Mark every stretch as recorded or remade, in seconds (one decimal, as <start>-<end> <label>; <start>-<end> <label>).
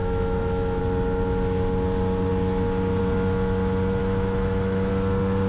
0.0-0.8 remade; 0.8-4.0 recorded; 4.0-4.9 remade; 4.9-5.5 recorded